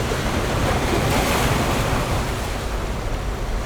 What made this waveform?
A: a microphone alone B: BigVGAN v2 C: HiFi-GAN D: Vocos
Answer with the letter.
A